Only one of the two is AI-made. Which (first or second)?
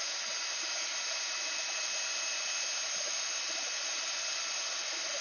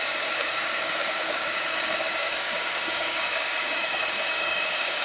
second